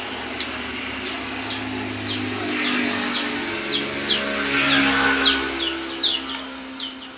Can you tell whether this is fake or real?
real